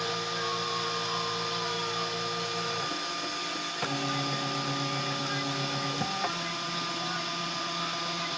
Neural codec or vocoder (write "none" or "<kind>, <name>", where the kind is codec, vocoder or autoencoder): none